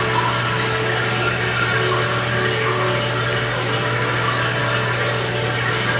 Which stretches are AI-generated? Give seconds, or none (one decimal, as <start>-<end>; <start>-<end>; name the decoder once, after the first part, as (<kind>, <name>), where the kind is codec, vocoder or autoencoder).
none